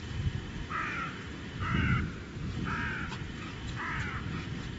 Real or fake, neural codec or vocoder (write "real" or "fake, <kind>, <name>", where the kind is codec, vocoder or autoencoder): real